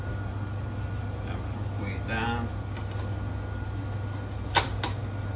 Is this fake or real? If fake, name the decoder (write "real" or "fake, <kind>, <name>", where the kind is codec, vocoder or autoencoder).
real